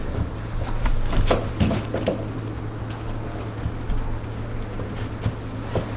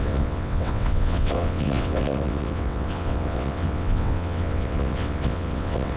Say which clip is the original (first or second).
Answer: first